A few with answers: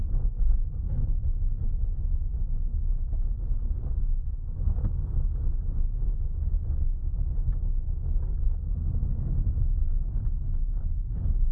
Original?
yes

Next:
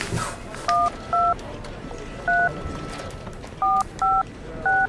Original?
yes